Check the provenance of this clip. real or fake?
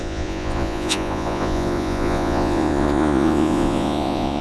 fake